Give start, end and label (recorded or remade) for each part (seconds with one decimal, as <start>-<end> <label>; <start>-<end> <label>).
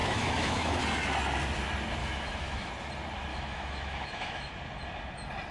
0.0-0.8 remade; 0.8-2.0 recorded; 2.0-2.7 remade; 2.7-3.3 recorded; 3.3-4.5 remade; 4.5-5.5 recorded